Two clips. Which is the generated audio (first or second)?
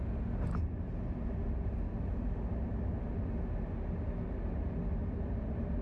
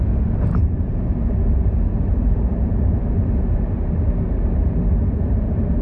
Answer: second